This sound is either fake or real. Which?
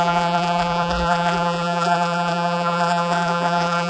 fake